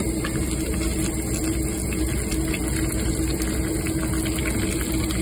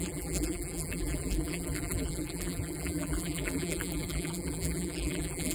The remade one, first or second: second